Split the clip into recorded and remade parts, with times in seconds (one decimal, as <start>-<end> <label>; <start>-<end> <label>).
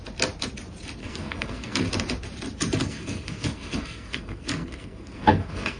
0.0-1.0 recorded; 1.0-1.9 remade; 1.9-2.8 recorded; 2.8-5.8 remade